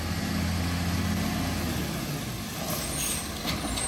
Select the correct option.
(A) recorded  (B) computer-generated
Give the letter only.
A